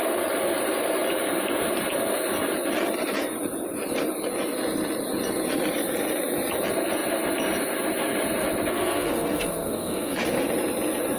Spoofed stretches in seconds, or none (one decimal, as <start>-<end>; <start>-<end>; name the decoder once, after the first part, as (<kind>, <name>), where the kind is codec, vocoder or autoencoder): 8.7-10.2 (codec, SNAC)